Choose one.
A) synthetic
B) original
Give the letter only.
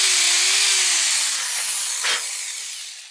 B